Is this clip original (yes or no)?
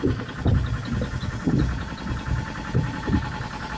yes